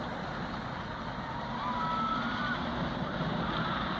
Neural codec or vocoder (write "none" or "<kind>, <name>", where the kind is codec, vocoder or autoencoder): none